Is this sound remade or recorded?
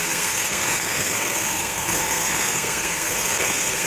remade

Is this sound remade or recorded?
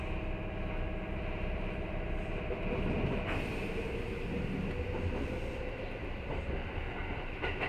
recorded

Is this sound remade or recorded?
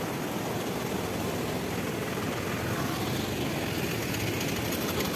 recorded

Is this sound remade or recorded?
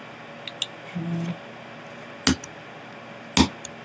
recorded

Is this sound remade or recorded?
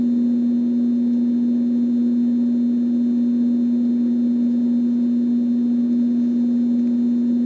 recorded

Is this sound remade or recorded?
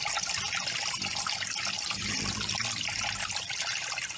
recorded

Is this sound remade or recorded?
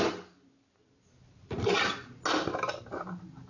recorded